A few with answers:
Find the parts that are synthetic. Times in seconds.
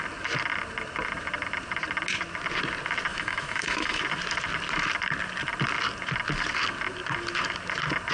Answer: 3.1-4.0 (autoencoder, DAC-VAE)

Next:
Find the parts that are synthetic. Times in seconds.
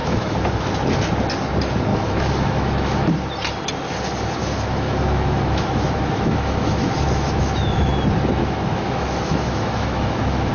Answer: 0.0-0.7 (autoencoder, DAC-VAE); 1.9-3.1; 4.4-7.9; 8.4-10.5